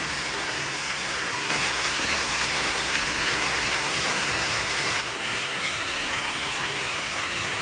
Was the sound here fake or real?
fake